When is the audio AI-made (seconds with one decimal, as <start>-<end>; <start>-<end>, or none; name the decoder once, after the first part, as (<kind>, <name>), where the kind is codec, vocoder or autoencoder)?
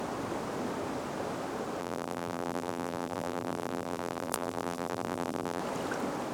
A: 1.8-5.6 (vocoder, BigVGAN v2)